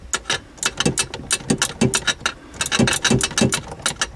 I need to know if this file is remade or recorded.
recorded